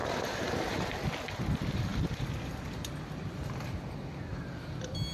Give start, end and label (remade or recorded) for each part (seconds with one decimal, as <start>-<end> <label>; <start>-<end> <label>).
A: 0.0-1.9 recorded; 1.9-2.5 remade; 2.5-5.1 recorded